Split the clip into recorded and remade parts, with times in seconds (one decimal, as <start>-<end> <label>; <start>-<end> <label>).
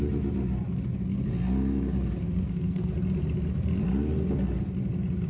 0.0-2.3 recorded; 2.3-2.9 remade; 2.9-5.3 recorded